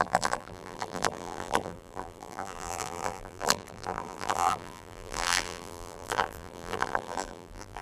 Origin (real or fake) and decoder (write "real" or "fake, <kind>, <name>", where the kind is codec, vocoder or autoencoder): fake, vocoder, BigVGAN v2